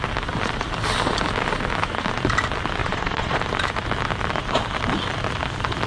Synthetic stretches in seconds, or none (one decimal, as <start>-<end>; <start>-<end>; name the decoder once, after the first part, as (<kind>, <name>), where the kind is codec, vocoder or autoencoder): 2.8-3.4 (vocoder, Vocos)